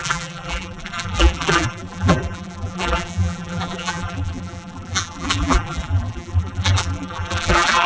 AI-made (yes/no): yes